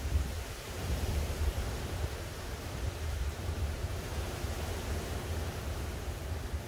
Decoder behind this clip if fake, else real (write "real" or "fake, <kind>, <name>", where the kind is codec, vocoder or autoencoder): fake, vocoder, BigVGAN v2